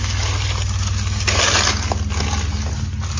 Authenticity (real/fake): real